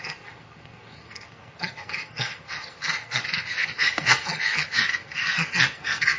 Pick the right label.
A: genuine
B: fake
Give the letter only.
B